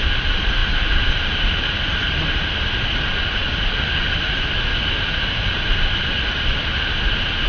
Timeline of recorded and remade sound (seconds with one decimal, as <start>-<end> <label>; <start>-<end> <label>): 0.0-7.5 recorded